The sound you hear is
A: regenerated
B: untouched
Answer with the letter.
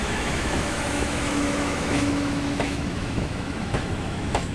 A